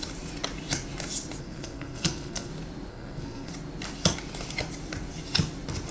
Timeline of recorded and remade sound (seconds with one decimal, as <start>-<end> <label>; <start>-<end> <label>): 0.0-1.4 recorded; 1.4-2.5 remade; 2.5-2.9 recorded; 2.9-3.5 remade; 3.5-5.9 recorded